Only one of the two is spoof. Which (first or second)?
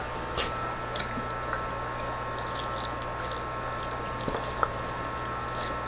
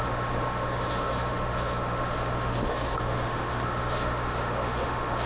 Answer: second